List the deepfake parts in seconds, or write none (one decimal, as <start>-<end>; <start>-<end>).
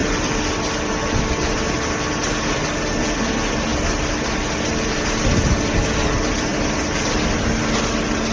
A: none